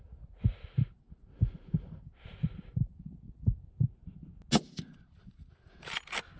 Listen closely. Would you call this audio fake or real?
real